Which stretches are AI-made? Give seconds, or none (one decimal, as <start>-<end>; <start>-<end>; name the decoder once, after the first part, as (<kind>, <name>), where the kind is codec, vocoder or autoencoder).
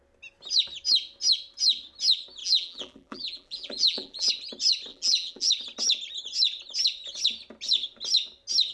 2.4-4.3 (vocoder, BigVGAN v2); 4.9-5.5